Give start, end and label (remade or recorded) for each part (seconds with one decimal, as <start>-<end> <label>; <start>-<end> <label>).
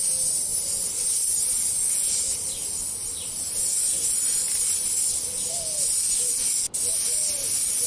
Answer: 0.0-0.5 recorded; 0.5-1.9 remade; 1.9-3.0 recorded; 3.0-5.5 remade; 5.5-7.9 recorded